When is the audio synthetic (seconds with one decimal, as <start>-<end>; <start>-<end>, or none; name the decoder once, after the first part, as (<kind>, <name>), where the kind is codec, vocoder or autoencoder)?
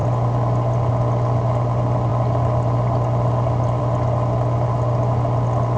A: none